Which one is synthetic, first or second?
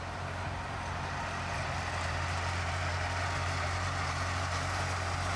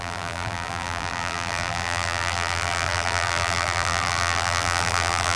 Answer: second